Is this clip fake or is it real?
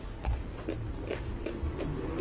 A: real